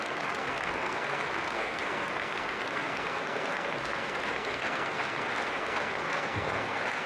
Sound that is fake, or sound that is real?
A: fake